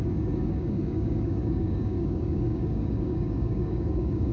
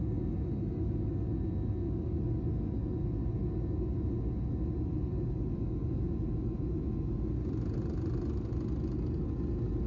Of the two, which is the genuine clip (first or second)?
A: second